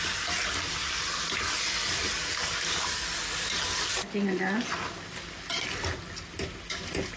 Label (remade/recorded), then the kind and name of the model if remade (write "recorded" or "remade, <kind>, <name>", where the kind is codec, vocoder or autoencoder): recorded